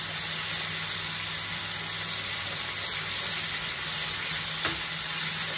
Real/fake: real